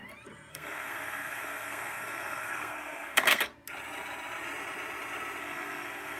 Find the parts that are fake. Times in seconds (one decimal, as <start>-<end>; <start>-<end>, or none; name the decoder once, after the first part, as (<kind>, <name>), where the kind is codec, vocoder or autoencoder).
0.5-3.5 (codec, SNAC); 5.4-6.2